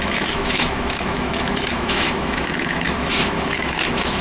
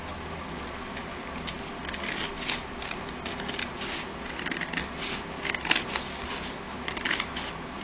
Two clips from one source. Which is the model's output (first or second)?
first